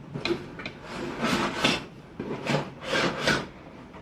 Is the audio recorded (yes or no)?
yes